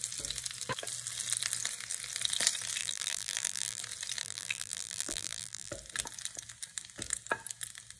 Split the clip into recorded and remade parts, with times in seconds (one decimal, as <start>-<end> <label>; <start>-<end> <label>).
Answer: 0.0-2.8 recorded; 2.8-3.8 remade; 3.8-4.2 recorded; 4.2-5.7 remade; 5.7-8.0 recorded